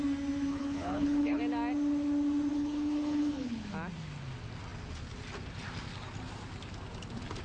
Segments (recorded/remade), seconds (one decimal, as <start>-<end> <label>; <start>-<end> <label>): 0.0-0.5 recorded; 0.5-1.4 remade; 1.4-2.5 recorded; 2.5-3.7 remade; 3.7-7.4 recorded